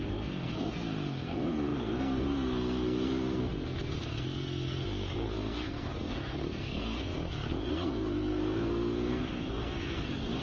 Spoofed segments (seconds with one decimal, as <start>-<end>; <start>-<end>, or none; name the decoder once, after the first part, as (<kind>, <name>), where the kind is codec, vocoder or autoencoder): 0.0-10.4 (codec, SNAC)